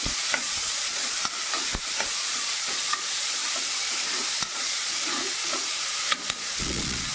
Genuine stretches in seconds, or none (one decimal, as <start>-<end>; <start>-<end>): 1.2-2.1; 3.4-3.9